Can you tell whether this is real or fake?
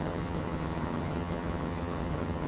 fake